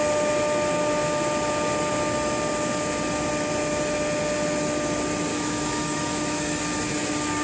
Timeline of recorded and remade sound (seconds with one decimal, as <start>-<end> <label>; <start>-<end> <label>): 0.0-5.3 recorded; 5.3-6.6 remade; 6.6-7.4 recorded